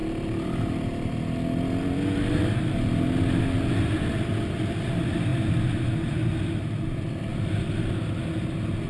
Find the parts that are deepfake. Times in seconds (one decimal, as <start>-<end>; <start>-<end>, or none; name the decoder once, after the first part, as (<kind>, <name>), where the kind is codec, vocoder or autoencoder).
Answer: none